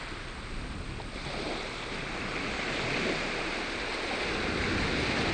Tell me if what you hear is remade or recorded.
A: recorded